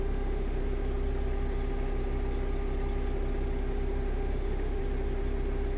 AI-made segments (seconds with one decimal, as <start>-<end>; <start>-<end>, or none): 0.0-0.6; 4.1-4.8